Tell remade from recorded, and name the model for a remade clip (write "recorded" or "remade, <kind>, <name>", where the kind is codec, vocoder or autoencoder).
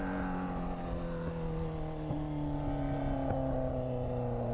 recorded